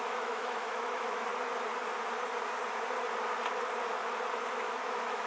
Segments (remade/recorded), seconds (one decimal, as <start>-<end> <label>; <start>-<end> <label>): 0.0-1.3 remade; 1.3-4.5 recorded; 4.5-5.3 remade